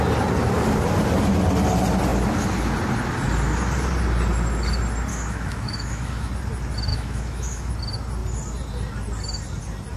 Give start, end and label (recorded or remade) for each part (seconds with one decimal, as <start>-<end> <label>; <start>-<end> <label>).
0.0-5.1 recorded; 5.1-6.3 remade; 6.3-6.9 recorded; 6.9-7.7 remade; 7.7-10.0 recorded